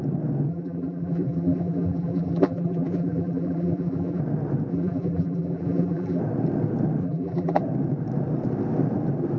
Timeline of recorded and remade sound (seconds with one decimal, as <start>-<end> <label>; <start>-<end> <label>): 0.0-0.5 recorded; 0.5-4.2 remade; 4.2-4.7 recorded; 4.7-6.2 remade; 6.2-7.0 recorded; 7.0-7.6 remade; 7.6-9.4 recorded